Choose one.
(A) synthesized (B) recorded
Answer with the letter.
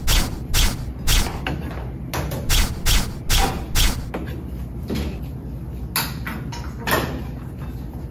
B